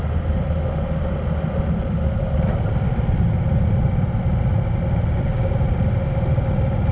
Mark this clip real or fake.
real